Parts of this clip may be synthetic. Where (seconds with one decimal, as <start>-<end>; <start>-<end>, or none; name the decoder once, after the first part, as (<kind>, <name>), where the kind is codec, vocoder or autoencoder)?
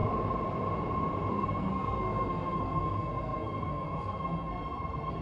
1.3-5.2 (codec, SNAC)